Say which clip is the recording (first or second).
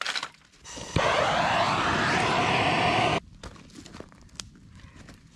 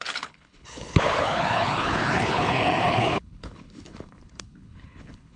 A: first